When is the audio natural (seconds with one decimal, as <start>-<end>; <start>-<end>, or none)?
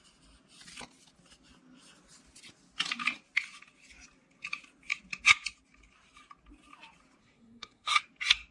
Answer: 0.0-7.2; 8.0-8.5